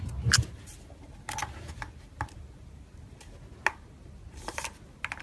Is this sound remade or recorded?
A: recorded